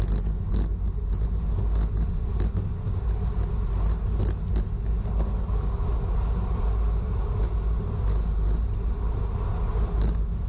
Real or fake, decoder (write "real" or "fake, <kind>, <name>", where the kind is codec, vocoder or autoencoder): real